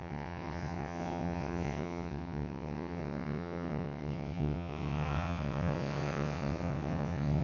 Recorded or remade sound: remade